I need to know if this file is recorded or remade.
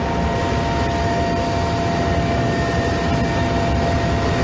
recorded